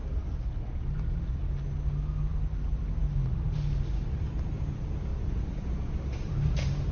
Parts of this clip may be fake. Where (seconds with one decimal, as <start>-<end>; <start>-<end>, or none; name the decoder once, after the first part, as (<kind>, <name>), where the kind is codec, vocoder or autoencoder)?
5.1-6.3 (vocoder, BigVGAN v2)